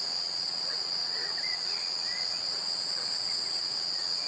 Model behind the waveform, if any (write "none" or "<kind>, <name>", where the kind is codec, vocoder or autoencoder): vocoder, WaveNeXt